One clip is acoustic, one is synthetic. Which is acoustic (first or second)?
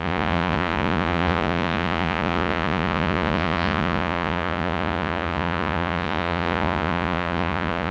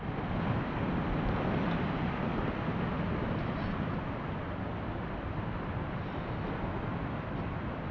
second